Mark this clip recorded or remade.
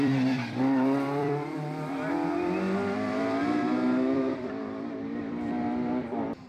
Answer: remade